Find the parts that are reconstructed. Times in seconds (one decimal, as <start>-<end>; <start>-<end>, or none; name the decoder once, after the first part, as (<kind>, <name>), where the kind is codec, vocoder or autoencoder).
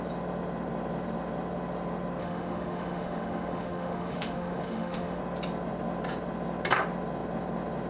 2.2-5.2 (autoencoder, DAC-VAE)